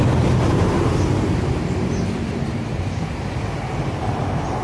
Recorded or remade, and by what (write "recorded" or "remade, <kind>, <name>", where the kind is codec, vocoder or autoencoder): recorded